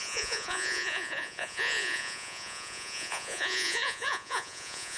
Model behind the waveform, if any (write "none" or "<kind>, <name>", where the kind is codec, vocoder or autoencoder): vocoder, Vocos